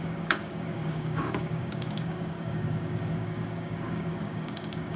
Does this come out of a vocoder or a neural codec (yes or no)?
yes